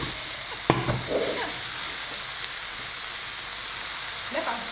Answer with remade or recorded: recorded